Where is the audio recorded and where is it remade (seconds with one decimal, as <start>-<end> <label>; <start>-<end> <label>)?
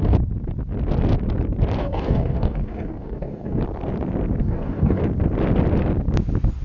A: 0.0-1.8 recorded; 1.8-3.6 remade; 3.6-4.4 recorded; 4.4-5.0 remade; 5.0-6.6 recorded